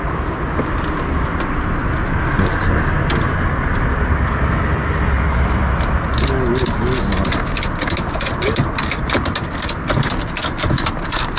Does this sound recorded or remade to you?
recorded